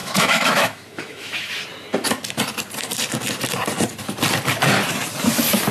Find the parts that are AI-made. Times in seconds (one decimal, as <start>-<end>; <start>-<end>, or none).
0.0-1.5